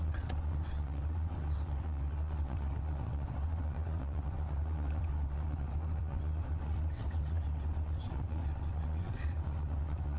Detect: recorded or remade remade